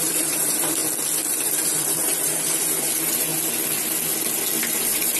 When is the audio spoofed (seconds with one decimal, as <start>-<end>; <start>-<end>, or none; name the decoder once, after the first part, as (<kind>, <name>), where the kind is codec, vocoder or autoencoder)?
0.0-0.8 (vocoder, BigVGAN v2); 1.4-3.3; 4.6-5.2